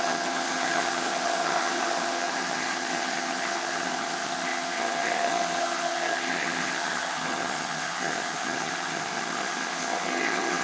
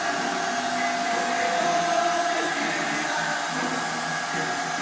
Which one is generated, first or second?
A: first